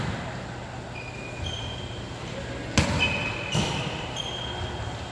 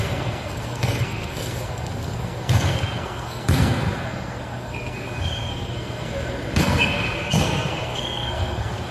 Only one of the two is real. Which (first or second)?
first